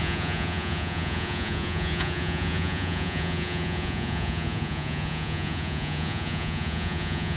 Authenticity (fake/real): fake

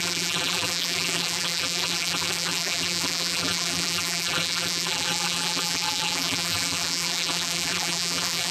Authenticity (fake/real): fake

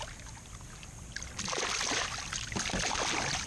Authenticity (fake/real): real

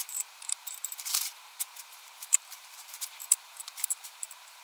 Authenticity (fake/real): fake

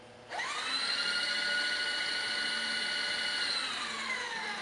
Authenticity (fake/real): real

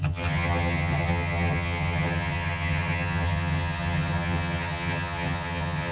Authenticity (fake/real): fake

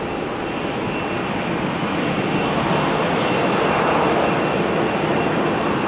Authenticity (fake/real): real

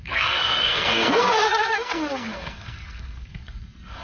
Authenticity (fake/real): fake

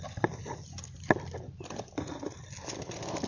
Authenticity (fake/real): real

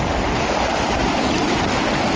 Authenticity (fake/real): real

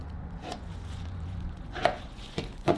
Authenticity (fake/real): fake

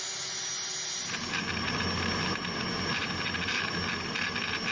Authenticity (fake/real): real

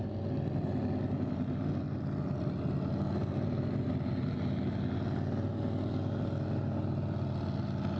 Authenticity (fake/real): real